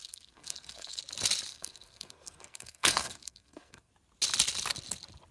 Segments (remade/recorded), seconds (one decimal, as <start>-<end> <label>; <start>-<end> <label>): 0.0-1.0 remade; 1.0-1.5 recorded; 1.5-3.9 remade; 3.9-5.3 recorded